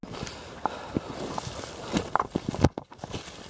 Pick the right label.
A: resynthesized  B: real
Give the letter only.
B